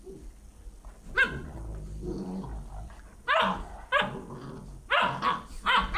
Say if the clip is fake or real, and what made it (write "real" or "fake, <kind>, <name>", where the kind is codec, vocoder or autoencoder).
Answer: real